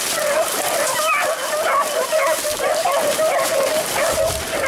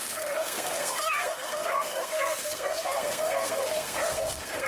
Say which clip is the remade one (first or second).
second